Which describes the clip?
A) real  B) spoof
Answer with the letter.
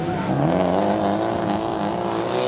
A